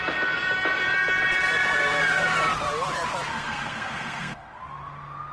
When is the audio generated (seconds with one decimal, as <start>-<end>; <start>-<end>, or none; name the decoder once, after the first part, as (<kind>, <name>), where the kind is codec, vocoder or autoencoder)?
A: 3.3-4.6 (codec, SNAC)